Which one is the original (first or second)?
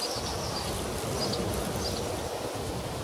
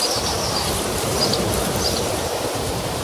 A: first